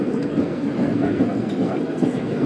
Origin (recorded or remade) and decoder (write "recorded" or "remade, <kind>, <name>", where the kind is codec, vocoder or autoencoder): remade, codec, SNAC